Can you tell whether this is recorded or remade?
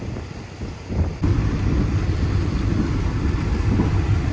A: recorded